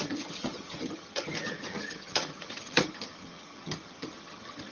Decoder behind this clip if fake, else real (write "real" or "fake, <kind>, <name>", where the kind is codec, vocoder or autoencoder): fake, vocoder, HiFi-GAN